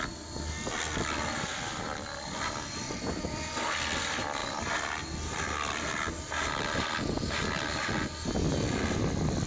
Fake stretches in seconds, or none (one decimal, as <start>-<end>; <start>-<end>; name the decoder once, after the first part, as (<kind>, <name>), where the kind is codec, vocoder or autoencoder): 1.5-3.8 (vocoder, BigVGAN v2)